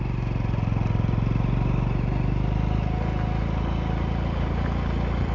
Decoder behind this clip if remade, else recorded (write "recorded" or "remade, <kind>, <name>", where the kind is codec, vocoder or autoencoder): recorded